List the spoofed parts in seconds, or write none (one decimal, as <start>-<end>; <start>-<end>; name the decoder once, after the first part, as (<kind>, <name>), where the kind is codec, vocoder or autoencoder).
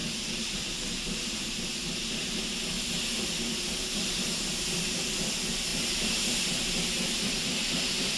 4.8-5.7 (vocoder, BigVGAN v2); 6.8-8.2